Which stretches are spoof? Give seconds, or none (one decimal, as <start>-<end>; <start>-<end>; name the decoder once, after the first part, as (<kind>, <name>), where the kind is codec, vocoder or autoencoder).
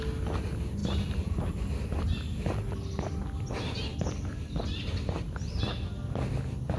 none